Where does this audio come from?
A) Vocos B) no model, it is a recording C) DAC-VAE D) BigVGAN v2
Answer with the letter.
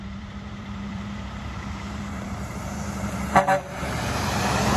D